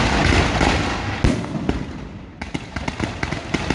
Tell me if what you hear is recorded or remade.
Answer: recorded